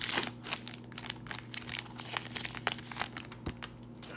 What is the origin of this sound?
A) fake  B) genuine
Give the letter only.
B